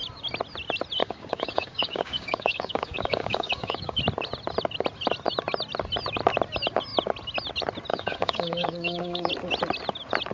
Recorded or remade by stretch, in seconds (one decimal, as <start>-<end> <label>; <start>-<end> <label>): 0.0-1.0 recorded; 1.0-4.0 remade; 4.0-7.9 recorded; 7.9-9.3 remade; 9.3-10.3 recorded